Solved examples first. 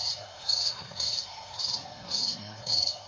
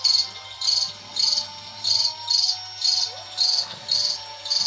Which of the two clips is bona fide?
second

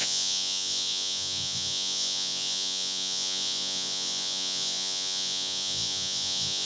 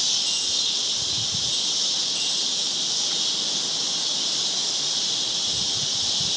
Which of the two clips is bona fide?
second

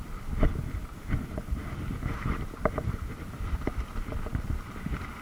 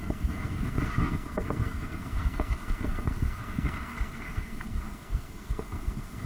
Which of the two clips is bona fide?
first